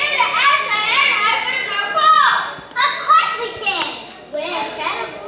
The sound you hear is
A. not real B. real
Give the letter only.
B